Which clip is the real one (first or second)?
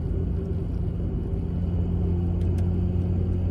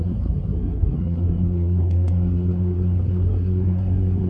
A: first